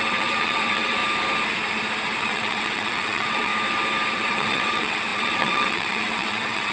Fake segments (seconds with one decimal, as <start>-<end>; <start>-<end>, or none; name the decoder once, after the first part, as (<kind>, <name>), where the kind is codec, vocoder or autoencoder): 0.0-1.0 (vocoder, WaveNeXt); 2.2-3.5; 4.1-6.7